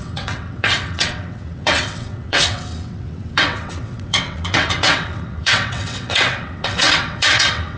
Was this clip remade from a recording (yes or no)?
yes